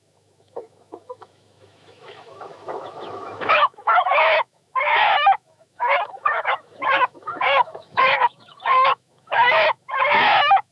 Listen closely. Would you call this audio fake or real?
fake